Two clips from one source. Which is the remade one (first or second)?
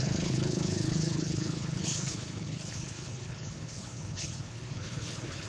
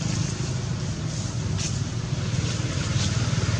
first